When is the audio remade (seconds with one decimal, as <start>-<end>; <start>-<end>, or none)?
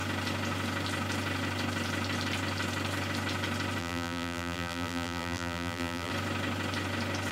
3.8-6.1